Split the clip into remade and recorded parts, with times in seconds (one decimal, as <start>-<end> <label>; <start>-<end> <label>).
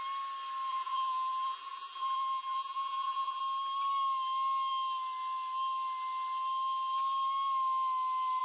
0.0-0.7 recorded; 0.7-3.4 remade; 3.4-8.4 recorded